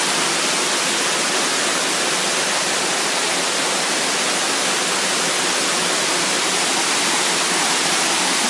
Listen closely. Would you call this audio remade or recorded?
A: recorded